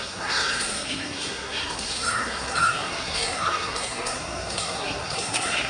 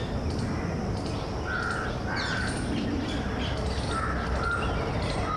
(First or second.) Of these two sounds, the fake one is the first